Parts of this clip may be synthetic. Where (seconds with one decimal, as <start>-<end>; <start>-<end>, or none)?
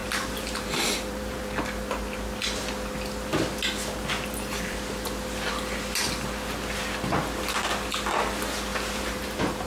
0.0-1.4; 8.7-9.7